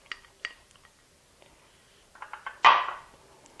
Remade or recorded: recorded